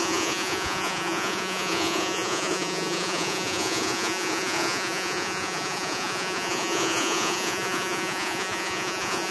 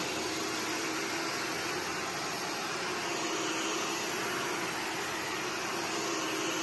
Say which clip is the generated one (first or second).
first